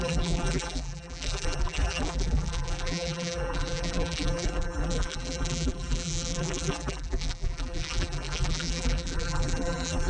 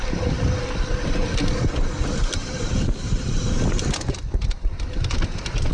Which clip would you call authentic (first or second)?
second